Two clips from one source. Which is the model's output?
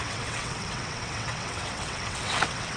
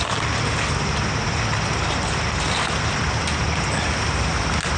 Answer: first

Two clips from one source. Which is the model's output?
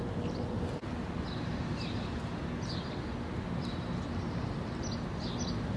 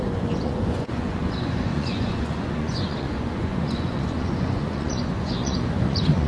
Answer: second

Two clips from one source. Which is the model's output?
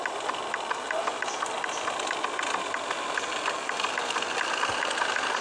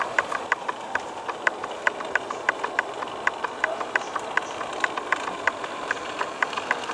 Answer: second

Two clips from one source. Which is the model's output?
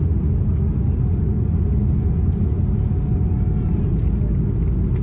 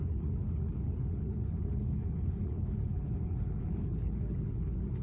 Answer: second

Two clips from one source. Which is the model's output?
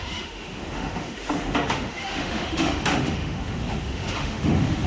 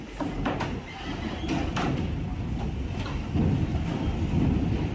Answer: first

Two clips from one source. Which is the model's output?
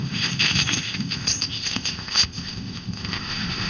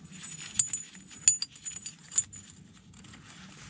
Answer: first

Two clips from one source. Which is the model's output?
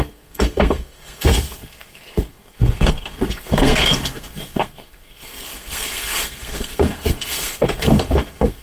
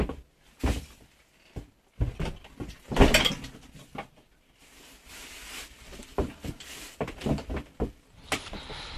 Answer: first